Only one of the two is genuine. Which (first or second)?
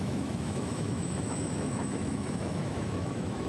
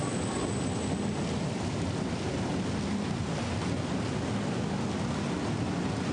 second